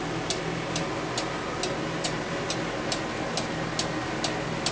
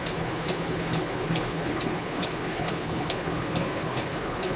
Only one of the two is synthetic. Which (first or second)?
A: second